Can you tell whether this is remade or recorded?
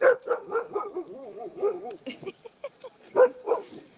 remade